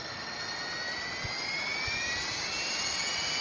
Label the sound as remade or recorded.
recorded